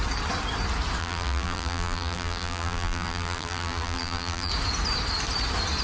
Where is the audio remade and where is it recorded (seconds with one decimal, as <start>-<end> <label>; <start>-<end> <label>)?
0.0-1.0 recorded; 1.0-4.5 remade; 4.5-5.8 recorded